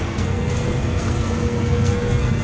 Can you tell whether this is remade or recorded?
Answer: remade